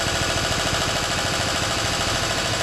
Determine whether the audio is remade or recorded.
recorded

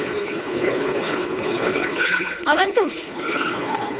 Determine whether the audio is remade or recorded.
remade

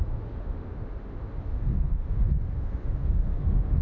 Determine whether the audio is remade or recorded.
remade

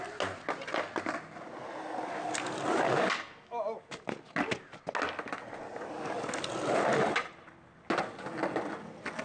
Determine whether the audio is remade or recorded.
recorded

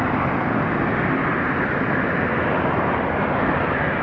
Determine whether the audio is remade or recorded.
recorded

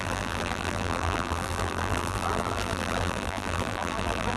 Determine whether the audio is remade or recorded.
remade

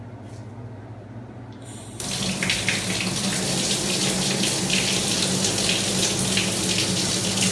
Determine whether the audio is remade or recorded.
recorded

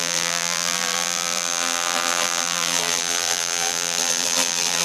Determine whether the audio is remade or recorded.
remade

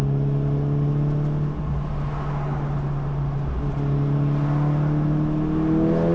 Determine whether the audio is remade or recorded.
recorded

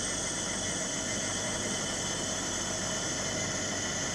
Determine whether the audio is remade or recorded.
recorded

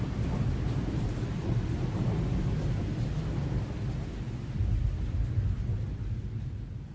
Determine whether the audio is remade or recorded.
recorded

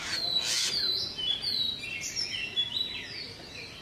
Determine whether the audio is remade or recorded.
recorded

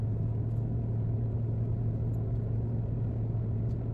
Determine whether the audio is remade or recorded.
recorded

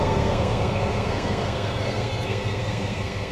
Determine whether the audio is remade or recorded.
remade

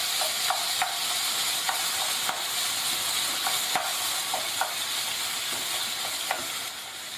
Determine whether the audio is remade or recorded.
recorded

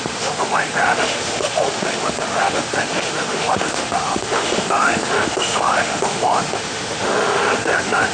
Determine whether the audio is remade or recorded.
remade